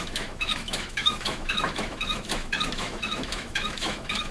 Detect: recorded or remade remade